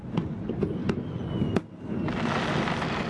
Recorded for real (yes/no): yes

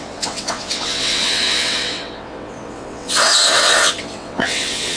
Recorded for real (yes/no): no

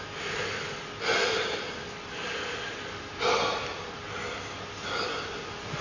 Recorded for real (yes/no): yes